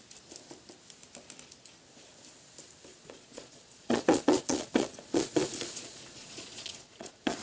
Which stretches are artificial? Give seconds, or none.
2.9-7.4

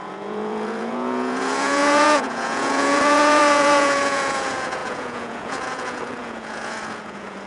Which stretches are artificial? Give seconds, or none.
0.0-7.5

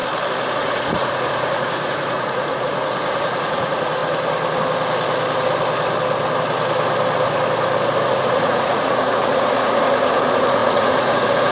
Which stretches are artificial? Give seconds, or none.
0.5-4.0; 8.1-11.5

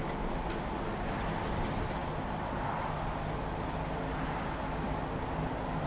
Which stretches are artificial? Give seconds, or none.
none

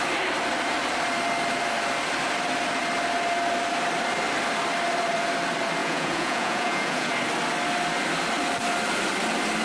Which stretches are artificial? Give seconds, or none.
5.8-7.1